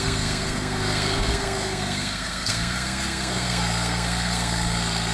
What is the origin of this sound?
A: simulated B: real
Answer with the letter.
A